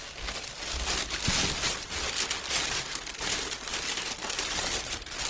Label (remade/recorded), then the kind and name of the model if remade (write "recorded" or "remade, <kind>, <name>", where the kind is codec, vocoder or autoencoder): recorded